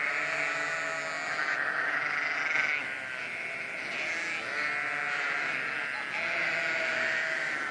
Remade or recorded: recorded